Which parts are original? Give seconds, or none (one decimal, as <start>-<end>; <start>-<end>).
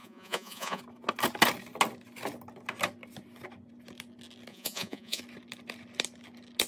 0.8-4.5; 5.2-6.7